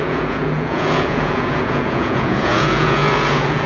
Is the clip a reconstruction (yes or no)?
yes